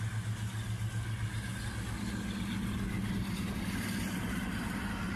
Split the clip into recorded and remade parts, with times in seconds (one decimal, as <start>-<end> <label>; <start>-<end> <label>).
0.0-5.2 recorded